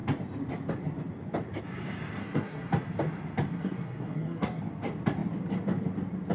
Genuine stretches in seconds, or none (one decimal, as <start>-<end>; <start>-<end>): 0.0-2.2; 2.7-3.5; 4.6-6.3